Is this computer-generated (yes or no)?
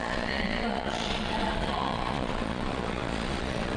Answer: yes